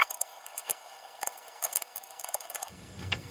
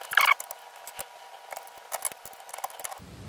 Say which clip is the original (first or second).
second